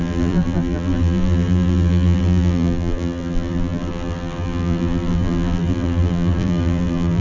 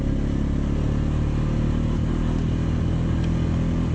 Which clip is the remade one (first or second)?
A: first